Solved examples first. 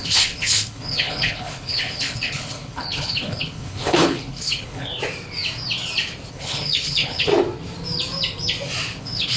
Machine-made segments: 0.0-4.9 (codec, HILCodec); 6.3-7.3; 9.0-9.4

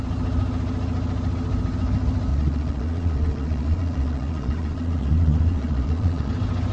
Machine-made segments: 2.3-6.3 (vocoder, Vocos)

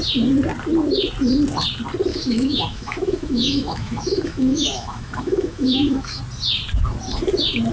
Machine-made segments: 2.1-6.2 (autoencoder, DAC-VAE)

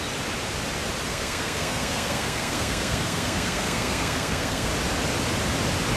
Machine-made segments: 1.1-4.7 (codec, SNAC)

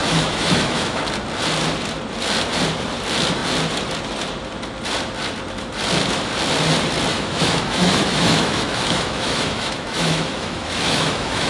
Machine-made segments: 0.0-1.0 (autoencoder, DAC-VAE); 7.1-11.5

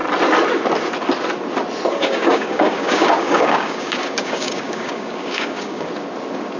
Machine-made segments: 1.9-5.9 (codec, DAC)